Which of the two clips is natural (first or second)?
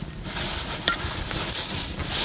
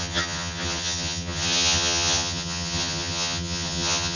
first